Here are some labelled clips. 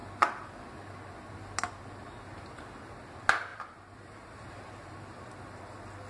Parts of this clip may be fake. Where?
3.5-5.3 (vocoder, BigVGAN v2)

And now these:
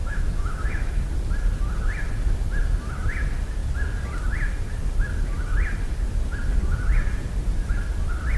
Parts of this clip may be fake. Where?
0.0-1.0 (autoencoder, DAC-VAE)

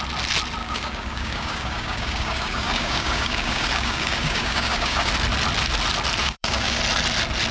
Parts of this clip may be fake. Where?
0.6-5.1 (codec, DAC); 6.2-6.8

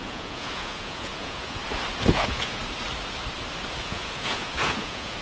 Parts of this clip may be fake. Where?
0.0-1.6 (vocoder, Vocos); 2.1-2.6; 3.8-5.2

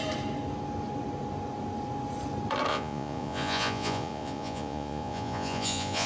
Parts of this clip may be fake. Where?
2.7-6.1 (vocoder, Vocos)

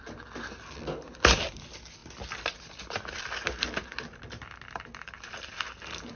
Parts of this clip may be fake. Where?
none

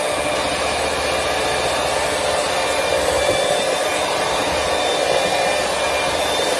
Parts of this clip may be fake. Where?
none